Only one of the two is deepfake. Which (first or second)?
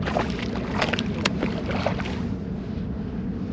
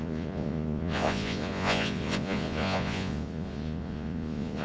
second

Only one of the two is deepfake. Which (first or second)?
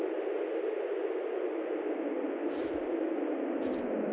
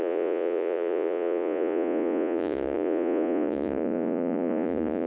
second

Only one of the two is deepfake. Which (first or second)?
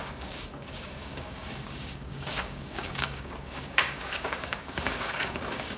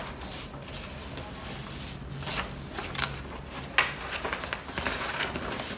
first